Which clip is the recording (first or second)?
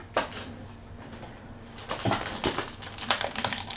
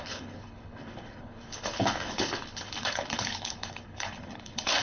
first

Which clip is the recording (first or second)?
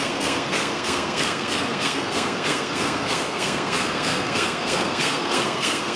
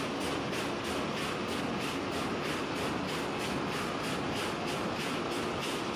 second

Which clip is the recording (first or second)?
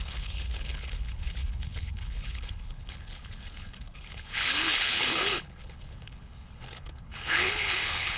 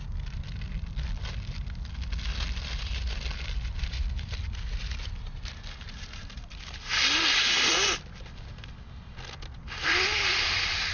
second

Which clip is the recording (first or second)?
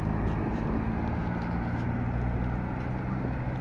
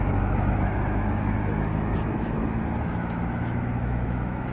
first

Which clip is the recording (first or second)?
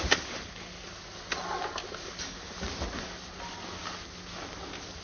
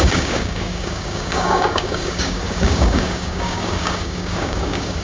first